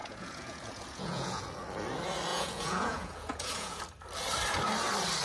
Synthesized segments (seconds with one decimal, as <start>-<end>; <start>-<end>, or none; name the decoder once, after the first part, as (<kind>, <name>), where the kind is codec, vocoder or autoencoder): 0.0-1.4 (vocoder, Vocos); 2.3-3.8